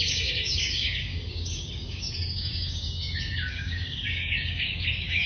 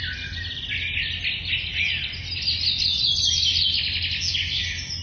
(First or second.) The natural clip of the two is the second